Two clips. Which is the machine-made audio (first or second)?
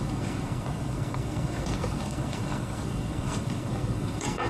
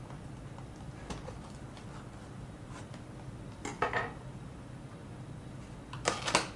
first